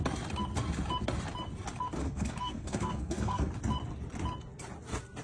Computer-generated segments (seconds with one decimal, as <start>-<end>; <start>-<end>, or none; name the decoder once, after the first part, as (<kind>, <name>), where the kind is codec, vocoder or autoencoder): 2.0-3.5 (codec, SNAC)